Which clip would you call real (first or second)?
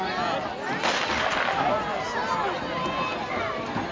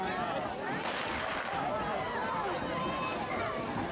first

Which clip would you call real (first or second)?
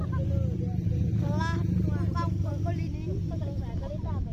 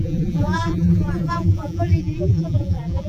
first